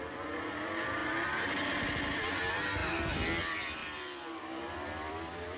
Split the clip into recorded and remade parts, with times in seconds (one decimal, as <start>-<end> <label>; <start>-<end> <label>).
0.0-2.8 remade; 2.8-3.4 recorded; 3.4-5.6 remade